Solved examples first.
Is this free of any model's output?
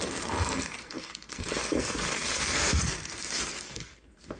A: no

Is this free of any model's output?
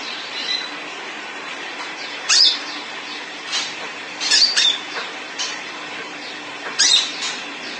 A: no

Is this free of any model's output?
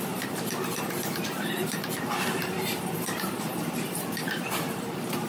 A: no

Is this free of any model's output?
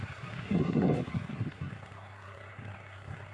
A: no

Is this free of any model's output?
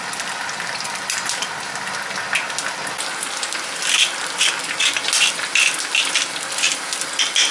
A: yes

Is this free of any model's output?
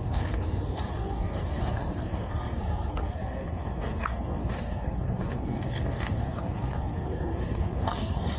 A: no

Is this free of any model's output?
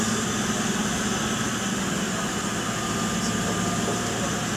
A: yes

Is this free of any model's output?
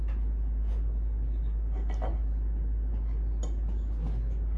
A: yes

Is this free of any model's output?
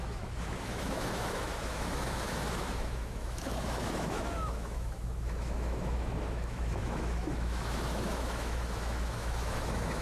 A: no